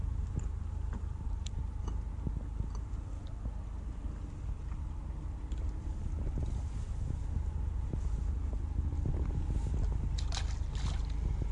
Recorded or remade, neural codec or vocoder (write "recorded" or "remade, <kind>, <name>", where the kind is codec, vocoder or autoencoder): recorded